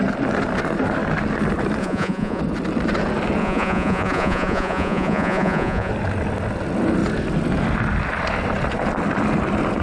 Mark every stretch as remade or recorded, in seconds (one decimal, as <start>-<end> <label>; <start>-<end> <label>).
0.0-1.8 recorded; 1.8-2.4 remade; 2.4-3.4 recorded; 3.4-5.9 remade; 5.9-9.8 recorded